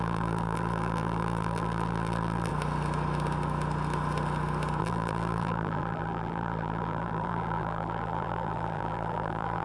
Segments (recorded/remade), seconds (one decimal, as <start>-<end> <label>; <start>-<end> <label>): 0.0-2.5 remade; 2.5-4.8 recorded; 4.8-9.6 remade